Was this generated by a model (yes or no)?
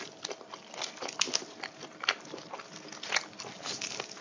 no